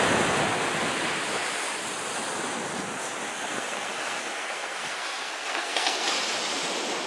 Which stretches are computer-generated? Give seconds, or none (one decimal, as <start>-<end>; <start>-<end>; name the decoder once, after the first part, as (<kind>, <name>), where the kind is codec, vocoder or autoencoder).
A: 3.3-6.1 (codec, SNAC)